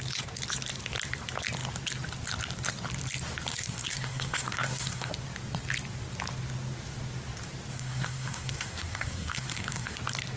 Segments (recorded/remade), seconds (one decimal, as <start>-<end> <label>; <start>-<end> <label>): 0.0-3.5 recorded; 3.5-5.1 remade; 5.1-7.7 recorded; 7.7-10.0 remade; 10.0-10.4 recorded